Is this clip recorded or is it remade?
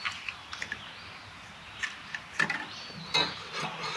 recorded